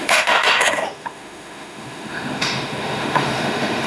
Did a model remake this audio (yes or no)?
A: yes